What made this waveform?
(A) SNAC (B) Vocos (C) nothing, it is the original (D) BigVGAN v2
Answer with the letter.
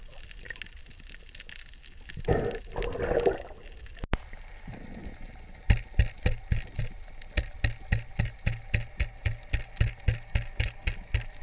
C